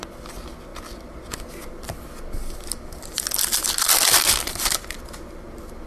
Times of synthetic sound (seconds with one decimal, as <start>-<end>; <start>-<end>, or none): none